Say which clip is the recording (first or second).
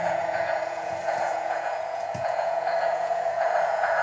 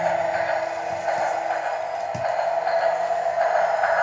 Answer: second